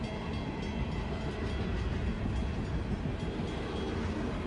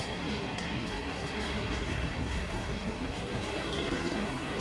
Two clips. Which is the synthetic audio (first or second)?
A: second